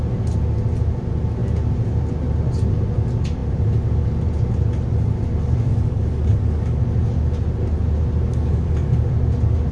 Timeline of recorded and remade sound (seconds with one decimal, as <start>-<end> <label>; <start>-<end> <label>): 0.0-5.7 recorded; 5.7-6.8 remade; 6.8-8.3 recorded; 8.3-9.1 remade; 9.1-9.7 recorded